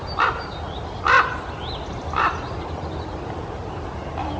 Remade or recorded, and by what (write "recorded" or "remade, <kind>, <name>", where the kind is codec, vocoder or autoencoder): recorded